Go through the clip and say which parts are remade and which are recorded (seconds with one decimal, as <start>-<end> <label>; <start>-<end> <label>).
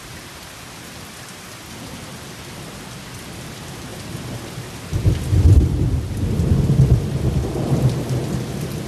0.0-8.9 recorded